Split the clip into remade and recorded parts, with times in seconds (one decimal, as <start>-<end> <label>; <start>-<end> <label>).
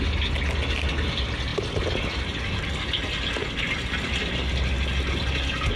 0.0-5.8 recorded